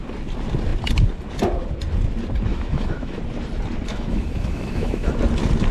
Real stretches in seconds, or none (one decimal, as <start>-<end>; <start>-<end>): 0.0-2.5; 3.2-3.9; 5.2-5.7